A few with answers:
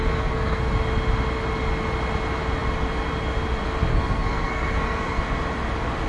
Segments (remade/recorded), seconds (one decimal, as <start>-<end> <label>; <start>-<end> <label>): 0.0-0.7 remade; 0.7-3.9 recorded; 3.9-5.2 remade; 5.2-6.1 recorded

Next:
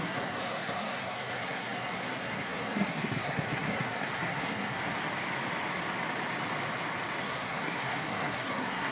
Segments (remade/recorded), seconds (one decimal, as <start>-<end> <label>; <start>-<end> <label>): 0.0-4.8 remade; 4.8-7.2 recorded; 7.2-8.9 remade

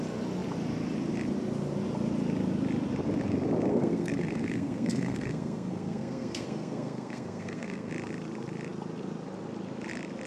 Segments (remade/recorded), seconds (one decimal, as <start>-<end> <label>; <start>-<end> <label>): 0.0-3.7 recorded; 3.7-7.9 remade; 7.9-10.3 recorded